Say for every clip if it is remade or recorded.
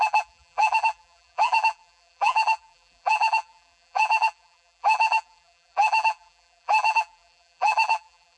remade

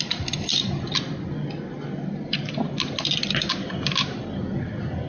recorded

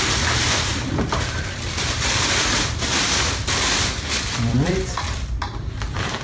remade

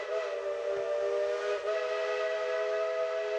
recorded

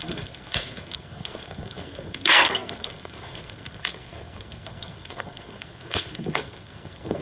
remade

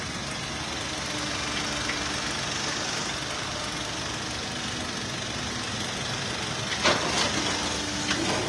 recorded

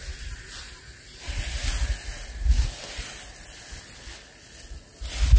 recorded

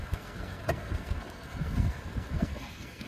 remade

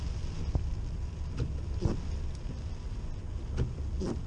recorded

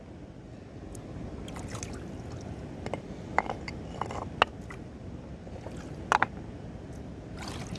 recorded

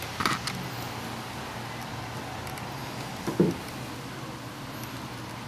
recorded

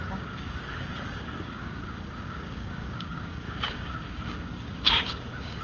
remade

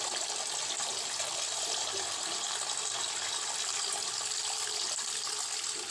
recorded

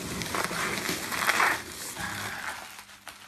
recorded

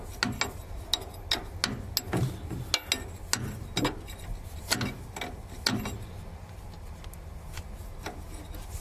recorded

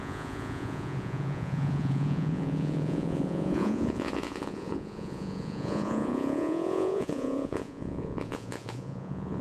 remade